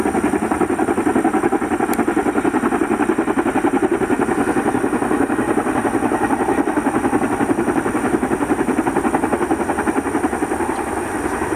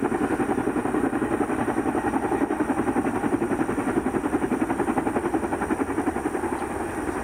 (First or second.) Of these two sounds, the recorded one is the first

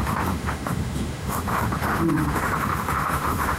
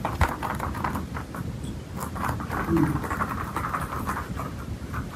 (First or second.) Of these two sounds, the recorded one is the second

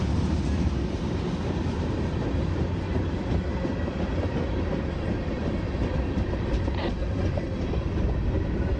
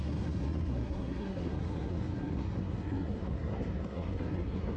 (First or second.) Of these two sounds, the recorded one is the first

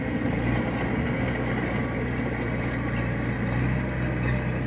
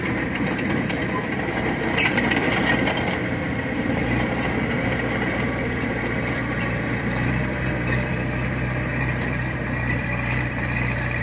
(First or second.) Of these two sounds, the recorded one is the first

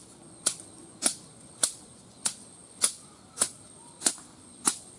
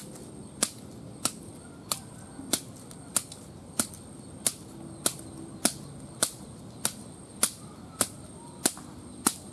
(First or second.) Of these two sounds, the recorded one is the second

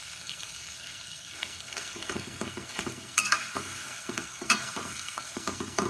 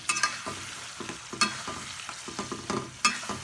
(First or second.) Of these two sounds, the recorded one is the second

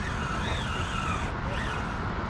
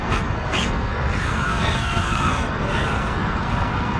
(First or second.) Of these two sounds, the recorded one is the first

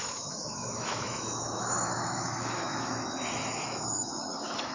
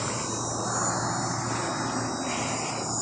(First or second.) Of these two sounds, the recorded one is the second